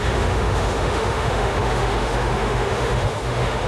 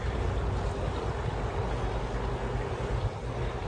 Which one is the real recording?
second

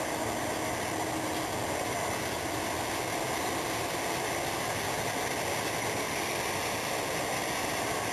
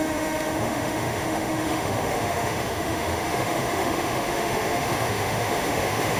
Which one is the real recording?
first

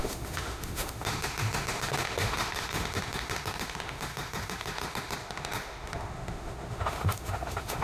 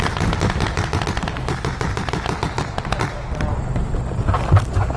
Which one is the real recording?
second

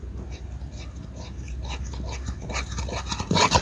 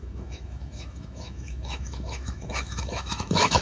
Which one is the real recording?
first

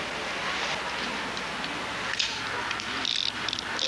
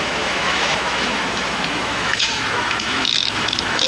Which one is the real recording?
first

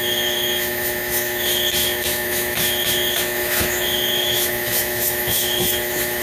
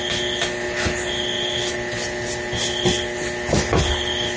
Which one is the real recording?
second